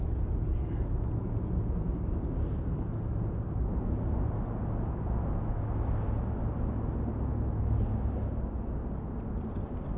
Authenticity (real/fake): real